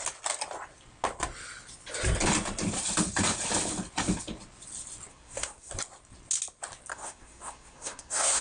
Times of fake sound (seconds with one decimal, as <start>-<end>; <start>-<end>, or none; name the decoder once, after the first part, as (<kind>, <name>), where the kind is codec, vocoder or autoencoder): 5.1-5.7 (codec, SNAC); 6.9-8.4